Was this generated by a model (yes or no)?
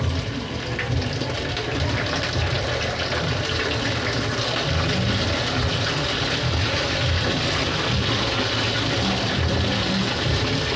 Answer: no